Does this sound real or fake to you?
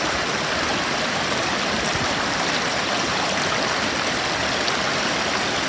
real